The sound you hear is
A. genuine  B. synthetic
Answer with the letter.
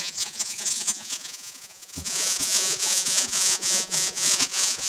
B